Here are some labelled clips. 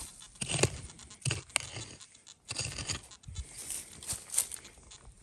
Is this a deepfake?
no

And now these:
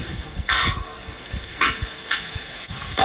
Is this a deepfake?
yes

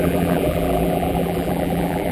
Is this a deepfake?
yes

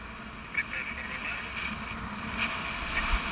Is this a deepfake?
no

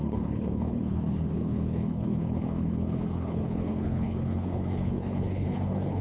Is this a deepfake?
yes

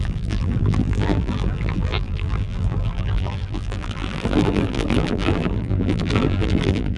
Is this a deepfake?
yes